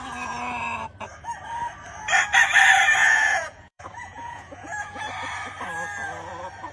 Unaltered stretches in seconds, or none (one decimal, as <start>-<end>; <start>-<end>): 0.0-3.0; 5.1-6.7